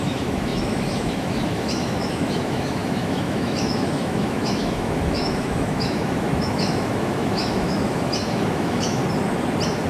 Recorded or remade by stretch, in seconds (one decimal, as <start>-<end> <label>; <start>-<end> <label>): 0.0-9.0 remade; 9.0-9.9 recorded